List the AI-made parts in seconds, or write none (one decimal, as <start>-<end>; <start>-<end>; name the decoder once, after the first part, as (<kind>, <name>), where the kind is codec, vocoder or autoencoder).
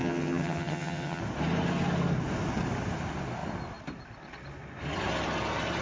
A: 0.0-1.2 (vocoder, HiFi-GAN)